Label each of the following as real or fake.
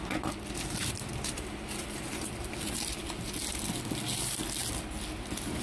real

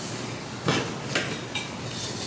real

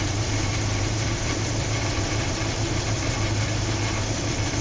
fake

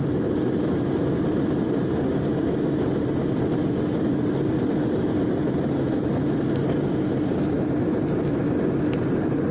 real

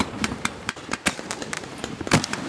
fake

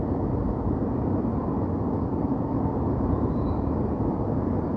fake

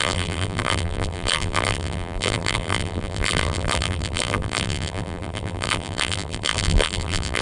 fake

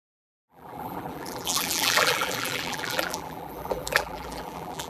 fake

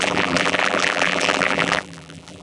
fake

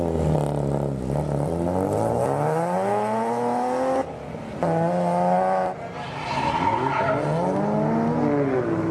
real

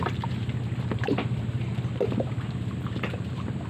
real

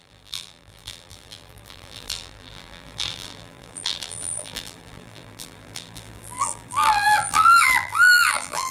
fake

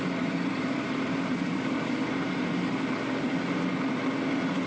fake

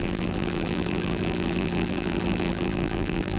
fake